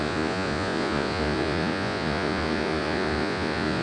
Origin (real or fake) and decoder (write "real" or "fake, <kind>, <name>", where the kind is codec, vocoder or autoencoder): fake, vocoder, Vocos